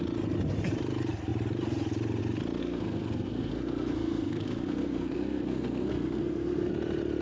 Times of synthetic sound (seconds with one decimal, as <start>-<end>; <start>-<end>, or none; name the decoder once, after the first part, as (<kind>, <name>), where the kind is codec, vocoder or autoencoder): 2.6-6.7 (codec, SNAC)